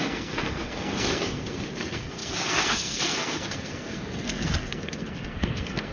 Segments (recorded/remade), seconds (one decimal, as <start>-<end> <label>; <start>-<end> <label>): 0.0-5.9 remade